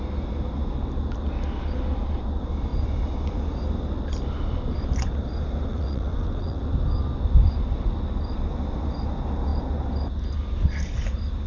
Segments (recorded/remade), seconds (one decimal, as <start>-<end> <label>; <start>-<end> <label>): 0.0-5.7 recorded; 5.7-6.6 remade; 6.6-11.5 recorded